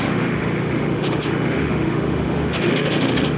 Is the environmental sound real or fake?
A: fake